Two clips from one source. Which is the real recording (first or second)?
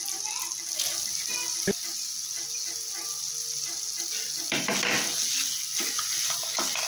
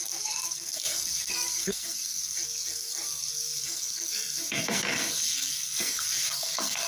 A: first